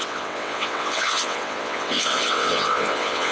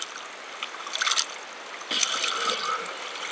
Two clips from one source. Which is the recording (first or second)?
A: second